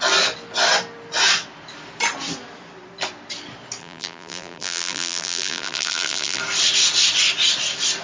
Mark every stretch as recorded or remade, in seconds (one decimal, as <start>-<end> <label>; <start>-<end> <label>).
0.0-3.8 recorded; 3.8-6.4 remade; 6.4-8.0 recorded